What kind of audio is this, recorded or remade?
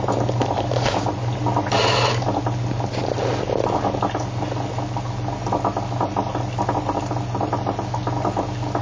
recorded